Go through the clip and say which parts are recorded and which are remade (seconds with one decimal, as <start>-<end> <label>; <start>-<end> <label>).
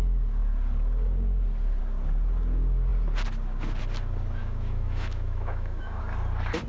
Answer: 0.0-4.4 recorded; 4.4-6.0 remade; 6.0-6.7 recorded